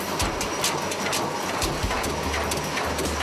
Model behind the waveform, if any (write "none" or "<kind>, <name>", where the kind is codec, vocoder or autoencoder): none